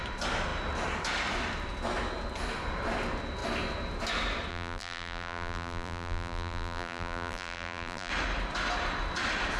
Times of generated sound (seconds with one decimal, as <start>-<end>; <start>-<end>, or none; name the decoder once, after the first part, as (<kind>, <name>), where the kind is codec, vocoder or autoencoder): 4.5-8.1 (vocoder, BigVGAN v2)